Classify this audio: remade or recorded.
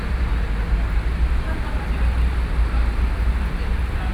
recorded